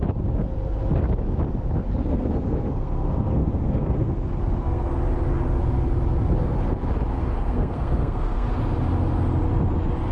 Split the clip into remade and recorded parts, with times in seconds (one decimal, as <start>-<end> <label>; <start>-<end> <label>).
0.0-2.0 recorded; 2.0-4.9 remade; 4.9-7.1 recorded; 7.1-8.5 remade; 8.5-10.1 recorded